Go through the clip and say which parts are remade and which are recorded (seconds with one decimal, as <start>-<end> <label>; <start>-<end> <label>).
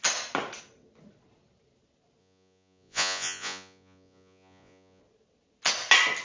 0.0-2.2 recorded; 2.2-5.0 remade; 5.0-6.2 recorded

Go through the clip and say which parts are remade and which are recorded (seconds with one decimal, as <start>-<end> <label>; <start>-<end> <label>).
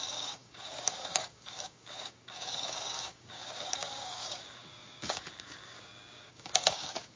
0.0-7.2 remade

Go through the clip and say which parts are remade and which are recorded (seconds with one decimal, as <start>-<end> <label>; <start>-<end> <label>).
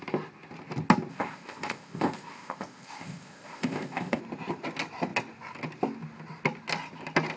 0.0-1.1 recorded; 1.1-4.2 remade; 4.2-7.4 recorded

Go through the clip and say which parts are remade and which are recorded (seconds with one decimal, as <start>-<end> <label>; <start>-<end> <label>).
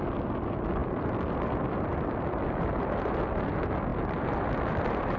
0.0-0.8 recorded; 0.8-2.6 remade; 2.6-3.9 recorded; 3.9-5.2 remade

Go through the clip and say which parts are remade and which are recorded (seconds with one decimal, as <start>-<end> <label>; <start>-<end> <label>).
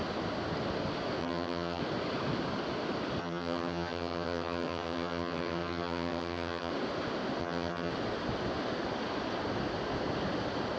0.0-1.2 recorded; 1.2-1.8 remade; 1.8-3.2 recorded; 3.2-6.7 remade; 6.7-7.4 recorded; 7.4-7.9 remade; 7.9-10.8 recorded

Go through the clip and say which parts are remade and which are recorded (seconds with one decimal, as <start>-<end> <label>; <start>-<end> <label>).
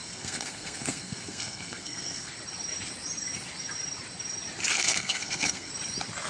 0.0-2.3 remade; 2.3-4.7 recorded; 4.7-5.7 remade; 5.7-6.3 recorded